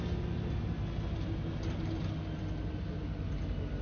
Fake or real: real